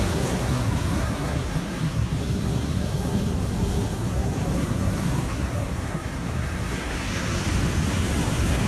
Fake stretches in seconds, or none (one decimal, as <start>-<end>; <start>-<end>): 0.0-7.4; 7.9-8.7